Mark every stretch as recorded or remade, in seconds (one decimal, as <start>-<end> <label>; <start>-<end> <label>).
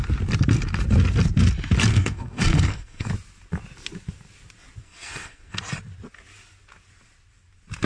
0.0-1.9 recorded; 1.9-3.1 remade; 3.1-4.8 recorded; 4.8-5.6 remade; 5.6-7.9 recorded